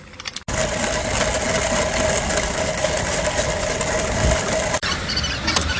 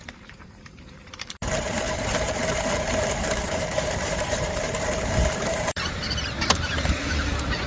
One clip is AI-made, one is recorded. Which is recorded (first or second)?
first